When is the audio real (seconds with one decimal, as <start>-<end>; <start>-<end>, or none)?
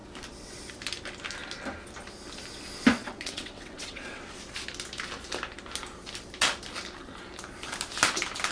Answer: 0.0-3.0; 4.4-8.5